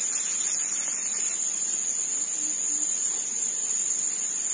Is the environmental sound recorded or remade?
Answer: recorded